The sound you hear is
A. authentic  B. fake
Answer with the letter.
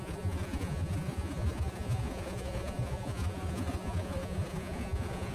B